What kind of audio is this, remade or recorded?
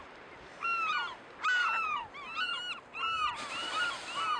recorded